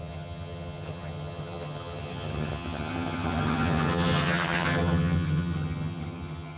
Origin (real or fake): fake